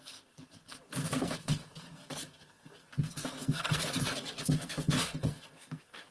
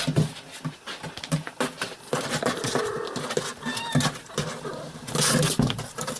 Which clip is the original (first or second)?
second